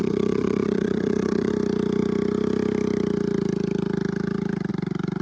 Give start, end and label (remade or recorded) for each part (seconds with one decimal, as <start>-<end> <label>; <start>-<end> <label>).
0.0-1.5 remade; 1.5-5.2 recorded